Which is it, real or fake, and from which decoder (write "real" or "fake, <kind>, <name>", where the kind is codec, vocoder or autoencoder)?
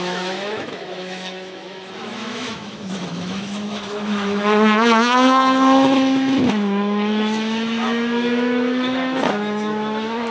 fake, autoencoder, DAC-VAE